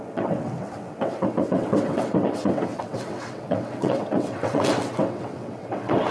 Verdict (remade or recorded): remade